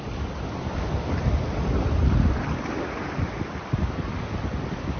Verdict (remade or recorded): recorded